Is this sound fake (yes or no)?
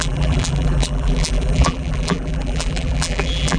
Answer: yes